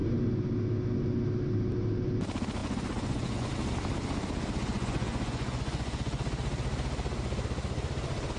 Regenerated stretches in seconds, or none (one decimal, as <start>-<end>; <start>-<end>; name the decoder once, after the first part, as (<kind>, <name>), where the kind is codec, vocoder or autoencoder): 2.6-3.5 (vocoder, Vocos); 4.7-6.2

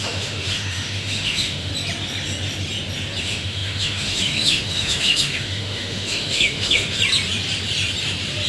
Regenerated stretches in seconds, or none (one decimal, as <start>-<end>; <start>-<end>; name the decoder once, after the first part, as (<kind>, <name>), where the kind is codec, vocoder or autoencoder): 0.0-1.7 (autoencoder, DAC-VAE); 3.2-7.0